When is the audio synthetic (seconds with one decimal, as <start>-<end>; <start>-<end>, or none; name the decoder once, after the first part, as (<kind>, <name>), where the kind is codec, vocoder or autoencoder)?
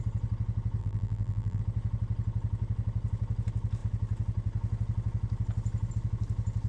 0.8-1.6 (vocoder, BigVGAN v2)